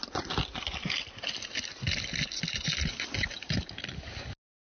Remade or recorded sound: recorded